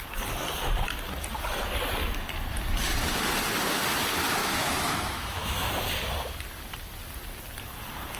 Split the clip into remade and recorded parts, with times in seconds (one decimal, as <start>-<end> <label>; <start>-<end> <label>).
0.0-4.4 recorded; 4.4-5.7 remade; 5.7-8.2 recorded

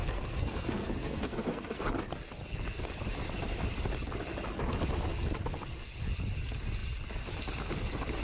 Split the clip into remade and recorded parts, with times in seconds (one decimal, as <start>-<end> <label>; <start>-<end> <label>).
0.0-1.8 remade; 1.8-8.2 recorded